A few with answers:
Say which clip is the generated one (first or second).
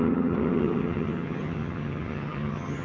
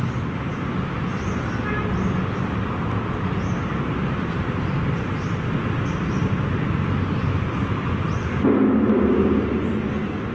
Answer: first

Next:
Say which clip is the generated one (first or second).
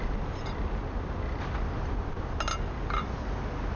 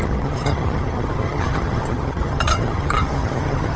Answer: second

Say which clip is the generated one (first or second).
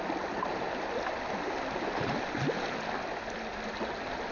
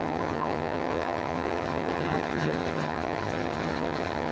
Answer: second